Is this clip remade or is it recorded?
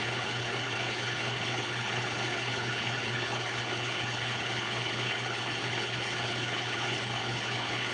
remade